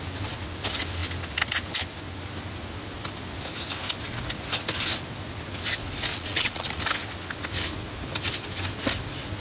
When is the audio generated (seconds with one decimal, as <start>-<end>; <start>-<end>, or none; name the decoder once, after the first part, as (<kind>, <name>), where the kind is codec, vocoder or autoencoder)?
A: 6.1-6.8 (vocoder, Vocos)

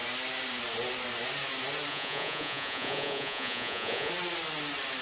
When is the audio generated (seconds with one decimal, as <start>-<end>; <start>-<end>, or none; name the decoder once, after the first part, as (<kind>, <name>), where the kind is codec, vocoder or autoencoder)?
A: 1.9-4.1 (vocoder, Vocos)